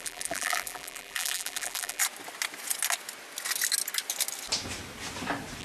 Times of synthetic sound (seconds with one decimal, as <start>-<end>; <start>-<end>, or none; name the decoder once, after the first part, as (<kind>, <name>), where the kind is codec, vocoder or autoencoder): 0.0-2.0 (vocoder, BigVGAN v2)